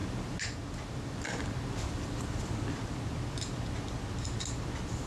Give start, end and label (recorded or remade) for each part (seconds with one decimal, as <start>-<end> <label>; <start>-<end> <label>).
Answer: 0.0-5.1 recorded